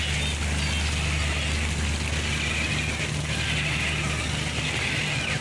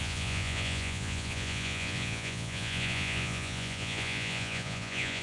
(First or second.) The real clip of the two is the first